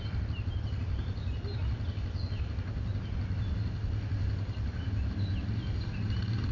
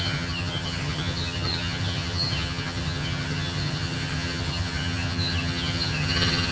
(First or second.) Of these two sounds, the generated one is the second